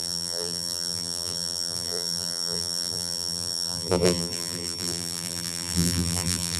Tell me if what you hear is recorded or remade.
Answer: remade